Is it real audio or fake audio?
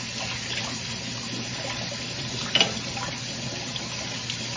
real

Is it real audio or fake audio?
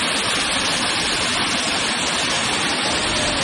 real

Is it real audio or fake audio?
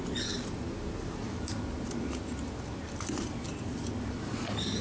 real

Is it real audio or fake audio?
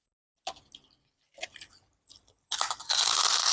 real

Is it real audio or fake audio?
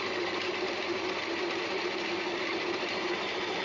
real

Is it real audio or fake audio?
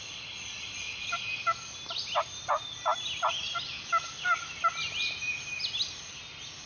real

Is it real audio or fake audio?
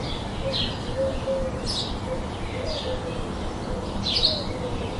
real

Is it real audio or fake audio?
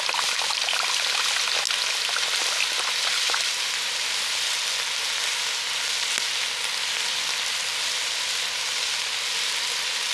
real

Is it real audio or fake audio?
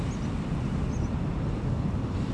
real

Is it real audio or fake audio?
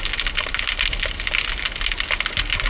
real